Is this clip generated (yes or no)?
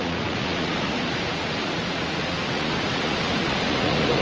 yes